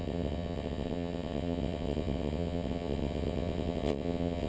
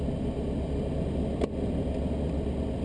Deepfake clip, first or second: first